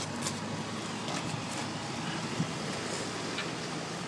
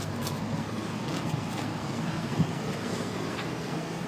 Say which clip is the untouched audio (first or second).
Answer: first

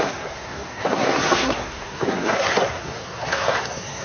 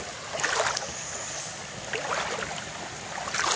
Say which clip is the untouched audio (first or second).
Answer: second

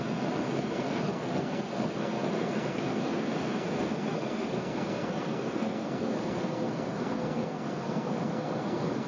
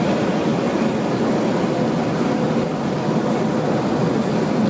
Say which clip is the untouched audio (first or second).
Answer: second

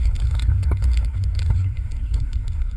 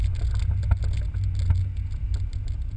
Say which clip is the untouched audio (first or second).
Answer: second